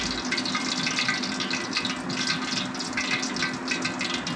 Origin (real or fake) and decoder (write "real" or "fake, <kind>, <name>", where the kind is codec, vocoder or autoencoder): real